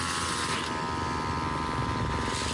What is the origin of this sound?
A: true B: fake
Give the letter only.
A